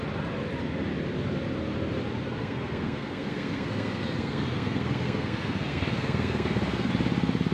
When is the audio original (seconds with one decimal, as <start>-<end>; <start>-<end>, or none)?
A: 0.0-2.4; 6.9-7.5